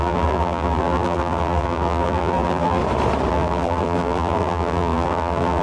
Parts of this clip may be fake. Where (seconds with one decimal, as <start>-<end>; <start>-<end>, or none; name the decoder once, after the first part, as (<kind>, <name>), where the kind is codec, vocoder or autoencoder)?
0.0-2.8 (vocoder, BigVGAN v2); 3.3-5.6